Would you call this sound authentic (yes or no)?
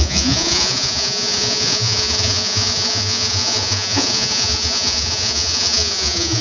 no